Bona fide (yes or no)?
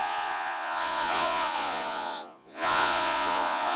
no